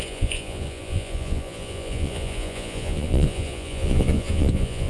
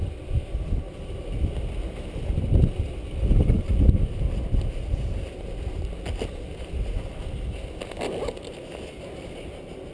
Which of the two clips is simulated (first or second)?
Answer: first